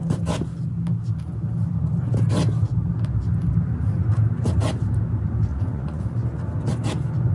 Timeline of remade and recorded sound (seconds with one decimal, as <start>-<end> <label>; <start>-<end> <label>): 0.0-5.5 recorded; 5.5-6.4 remade; 6.4-7.3 recorded